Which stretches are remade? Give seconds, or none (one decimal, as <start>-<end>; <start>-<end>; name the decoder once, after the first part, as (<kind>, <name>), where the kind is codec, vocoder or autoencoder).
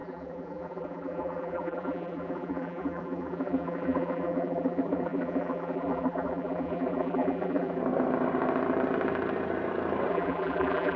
0.0-7.8 (vocoder, BigVGAN v2); 10.1-11.0